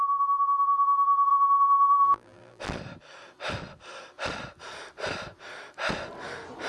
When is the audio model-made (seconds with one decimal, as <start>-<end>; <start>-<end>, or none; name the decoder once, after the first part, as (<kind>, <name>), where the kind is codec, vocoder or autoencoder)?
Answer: 1.3-2.6 (vocoder, BigVGAN v2)